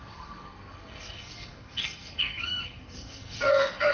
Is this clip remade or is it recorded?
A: remade